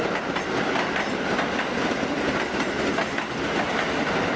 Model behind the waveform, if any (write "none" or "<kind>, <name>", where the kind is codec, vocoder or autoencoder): none